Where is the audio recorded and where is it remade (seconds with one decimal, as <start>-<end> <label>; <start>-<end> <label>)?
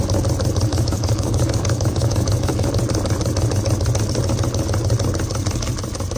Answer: 0.0-0.7 recorded; 0.7-2.7 remade; 2.7-6.2 recorded